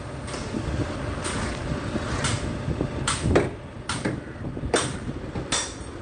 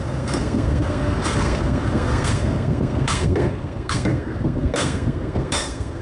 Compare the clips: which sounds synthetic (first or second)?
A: second